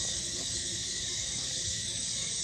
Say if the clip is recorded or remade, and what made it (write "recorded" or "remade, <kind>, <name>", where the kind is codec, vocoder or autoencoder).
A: remade, codec, DAC